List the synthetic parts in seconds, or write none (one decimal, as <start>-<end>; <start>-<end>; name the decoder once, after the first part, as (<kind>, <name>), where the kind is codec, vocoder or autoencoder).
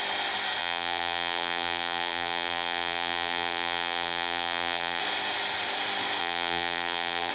0.6-5.0 (vocoder, BigVGAN v2); 6.2-7.3